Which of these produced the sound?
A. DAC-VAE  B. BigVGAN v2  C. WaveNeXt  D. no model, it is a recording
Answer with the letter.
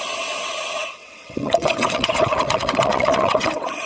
C